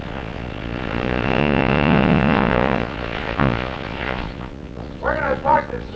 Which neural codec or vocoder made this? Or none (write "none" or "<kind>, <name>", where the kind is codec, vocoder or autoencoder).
vocoder, Vocos